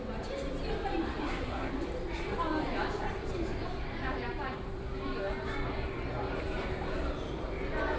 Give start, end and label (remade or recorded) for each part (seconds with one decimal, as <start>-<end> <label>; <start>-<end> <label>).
0.0-1.2 recorded; 1.2-1.7 remade; 1.7-8.0 recorded